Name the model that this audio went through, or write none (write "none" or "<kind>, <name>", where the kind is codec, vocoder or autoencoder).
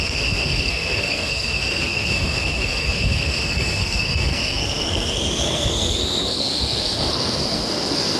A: codec, SNAC